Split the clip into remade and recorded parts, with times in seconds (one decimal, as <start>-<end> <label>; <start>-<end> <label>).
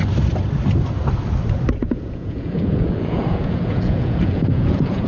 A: 0.0-1.8 recorded; 1.8-5.1 remade